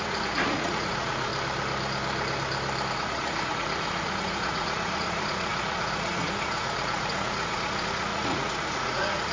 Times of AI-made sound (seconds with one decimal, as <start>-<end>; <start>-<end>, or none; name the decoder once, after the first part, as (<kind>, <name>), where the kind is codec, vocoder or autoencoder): 0.0-1.3 (vocoder, Vocos); 2.9-9.3